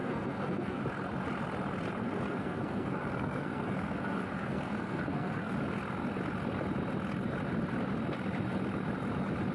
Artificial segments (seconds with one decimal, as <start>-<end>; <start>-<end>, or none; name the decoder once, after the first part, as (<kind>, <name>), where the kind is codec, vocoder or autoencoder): 0.0-0.8 (codec, SNAC); 2.0-5.5